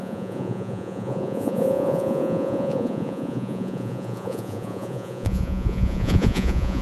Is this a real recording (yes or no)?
no